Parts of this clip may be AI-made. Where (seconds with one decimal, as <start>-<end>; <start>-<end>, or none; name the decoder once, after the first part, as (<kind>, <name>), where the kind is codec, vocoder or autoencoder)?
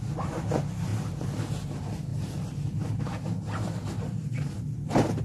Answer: 0.9-1.5 (vocoder, BigVGAN v2); 2.1-5.2